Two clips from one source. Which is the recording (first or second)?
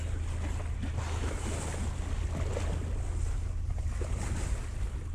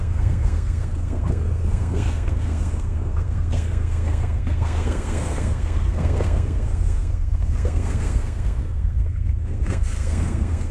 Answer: first